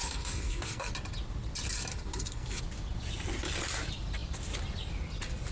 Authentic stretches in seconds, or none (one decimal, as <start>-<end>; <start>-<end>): 0.9-1.9; 2.6-5.5